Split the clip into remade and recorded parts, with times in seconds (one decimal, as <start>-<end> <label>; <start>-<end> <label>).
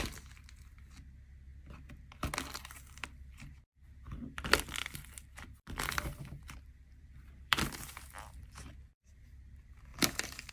0.0-4.8 recorded; 4.8-7.7 remade; 7.7-9.9 recorded; 9.9-10.5 remade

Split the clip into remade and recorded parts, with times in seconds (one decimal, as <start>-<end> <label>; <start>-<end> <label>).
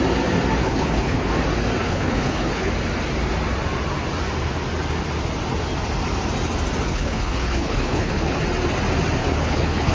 0.0-0.6 recorded; 0.6-1.3 remade; 1.3-1.8 recorded; 1.8-2.7 remade; 2.7-6.9 recorded; 6.9-8.4 remade; 8.4-9.2 recorded; 9.2-9.9 remade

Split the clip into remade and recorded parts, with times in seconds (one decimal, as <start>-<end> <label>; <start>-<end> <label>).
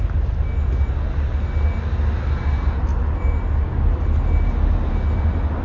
0.0-5.6 recorded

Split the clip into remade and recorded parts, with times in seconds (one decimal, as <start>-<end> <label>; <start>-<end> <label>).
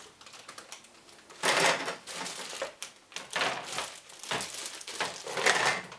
0.0-6.0 recorded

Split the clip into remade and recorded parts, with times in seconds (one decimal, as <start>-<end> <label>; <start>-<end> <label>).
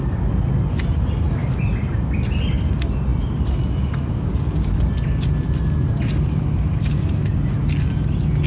0.0-8.5 recorded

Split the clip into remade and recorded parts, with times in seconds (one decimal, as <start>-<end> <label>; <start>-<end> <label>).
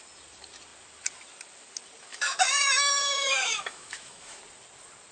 0.0-2.1 recorded; 2.1-4.4 remade; 4.4-5.1 recorded